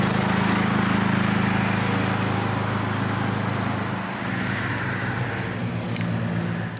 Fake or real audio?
real